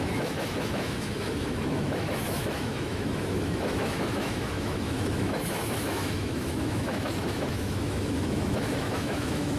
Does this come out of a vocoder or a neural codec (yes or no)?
yes